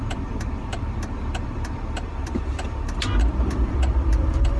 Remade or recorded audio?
remade